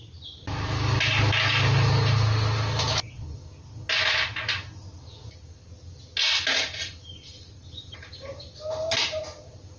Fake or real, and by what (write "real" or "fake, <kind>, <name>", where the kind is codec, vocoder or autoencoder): real